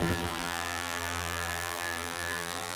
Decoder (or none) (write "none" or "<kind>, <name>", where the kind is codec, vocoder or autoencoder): vocoder, BigVGAN v2